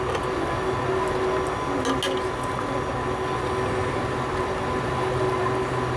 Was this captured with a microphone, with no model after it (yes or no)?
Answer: yes